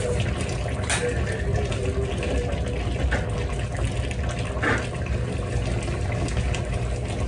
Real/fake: real